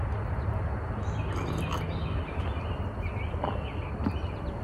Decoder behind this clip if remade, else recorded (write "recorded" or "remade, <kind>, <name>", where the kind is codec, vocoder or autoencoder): recorded